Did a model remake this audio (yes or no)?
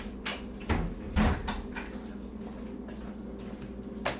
no